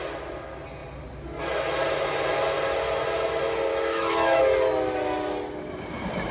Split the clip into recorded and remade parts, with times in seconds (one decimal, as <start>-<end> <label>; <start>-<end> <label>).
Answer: 0.0-3.7 recorded; 3.7-4.4 remade; 4.4-6.3 recorded